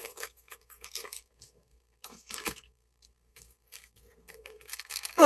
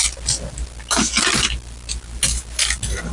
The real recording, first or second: second